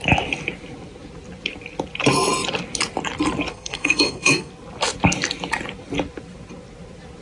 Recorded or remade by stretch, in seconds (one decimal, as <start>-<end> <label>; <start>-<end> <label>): 0.0-3.5 recorded; 3.5-4.5 remade; 4.5-7.2 recorded